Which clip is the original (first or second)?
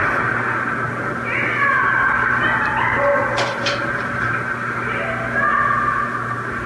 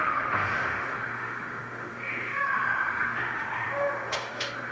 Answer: first